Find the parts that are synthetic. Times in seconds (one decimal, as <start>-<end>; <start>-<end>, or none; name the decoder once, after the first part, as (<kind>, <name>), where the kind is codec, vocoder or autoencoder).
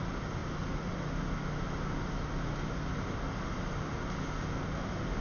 none